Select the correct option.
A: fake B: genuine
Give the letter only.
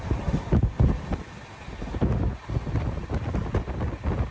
B